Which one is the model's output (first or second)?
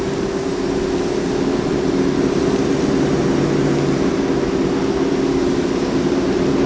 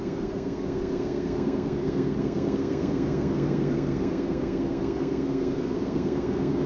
second